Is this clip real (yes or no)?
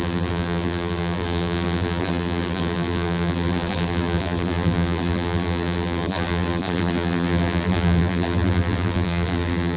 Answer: no